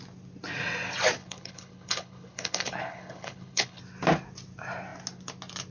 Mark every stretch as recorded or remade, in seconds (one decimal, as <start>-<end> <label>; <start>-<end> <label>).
0.0-1.2 recorded; 1.2-3.8 remade; 3.8-5.7 recorded